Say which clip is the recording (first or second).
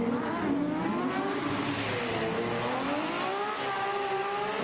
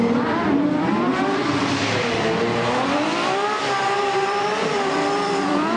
first